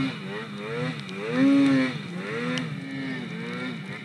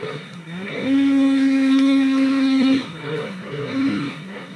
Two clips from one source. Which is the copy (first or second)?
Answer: second